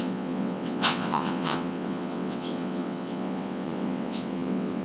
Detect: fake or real fake